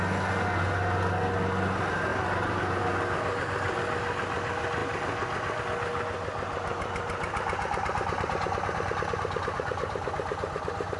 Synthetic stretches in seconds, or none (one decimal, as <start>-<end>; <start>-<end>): 2.1-2.8